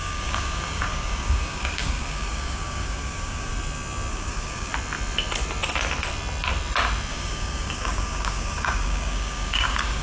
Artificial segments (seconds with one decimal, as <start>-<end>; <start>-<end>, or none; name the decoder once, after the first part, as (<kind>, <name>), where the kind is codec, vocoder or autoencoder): 0.0-3.5 (codec, DAC); 4.1-4.7; 7.1-10.0